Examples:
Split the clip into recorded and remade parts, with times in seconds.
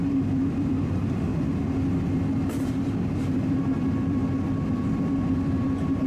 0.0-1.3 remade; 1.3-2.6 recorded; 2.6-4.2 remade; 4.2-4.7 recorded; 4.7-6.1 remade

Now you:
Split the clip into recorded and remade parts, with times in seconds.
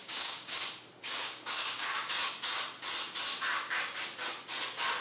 0.0-0.6 remade; 0.6-1.0 recorded; 1.0-2.1 remade; 2.1-5.0 recorded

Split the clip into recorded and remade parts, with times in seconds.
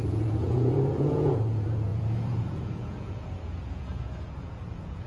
0.0-5.1 remade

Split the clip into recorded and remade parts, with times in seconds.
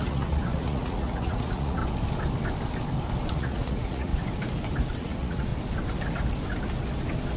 0.0-1.8 remade; 1.8-3.3 recorded; 3.3-4.1 remade; 4.1-5.0 recorded; 5.0-5.5 remade; 5.5-7.4 recorded